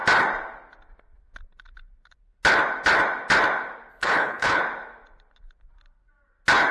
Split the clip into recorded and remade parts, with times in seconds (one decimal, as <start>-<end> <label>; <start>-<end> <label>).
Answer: 0.0-3.9 recorded; 3.9-4.6 remade; 4.6-6.7 recorded